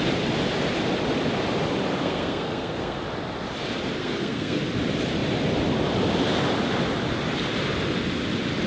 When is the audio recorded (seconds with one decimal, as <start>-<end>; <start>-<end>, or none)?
0.0-2.0; 3.0-4.0; 4.6-8.7

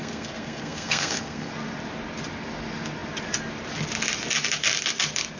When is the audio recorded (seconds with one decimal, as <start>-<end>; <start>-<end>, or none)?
1.5-5.4

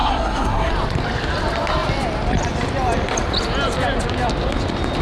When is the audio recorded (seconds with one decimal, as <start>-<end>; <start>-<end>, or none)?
0.7-5.0

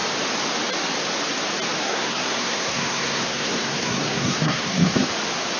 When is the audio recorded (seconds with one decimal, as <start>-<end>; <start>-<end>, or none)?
0.0-1.8; 5.1-5.6

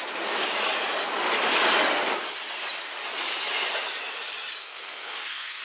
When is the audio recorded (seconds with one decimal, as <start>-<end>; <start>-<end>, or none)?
0.0-4.6

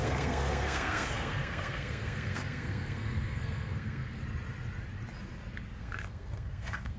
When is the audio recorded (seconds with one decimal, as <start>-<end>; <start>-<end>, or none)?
4.2-5.8

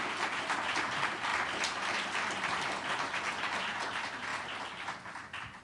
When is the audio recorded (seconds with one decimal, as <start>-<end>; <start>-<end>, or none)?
0.0-5.6

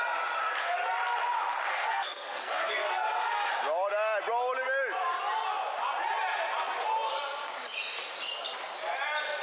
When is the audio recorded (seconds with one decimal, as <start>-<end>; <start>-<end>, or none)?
0.0-1.7; 3.5-9.4